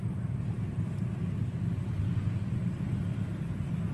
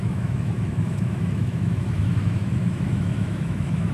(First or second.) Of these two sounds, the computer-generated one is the second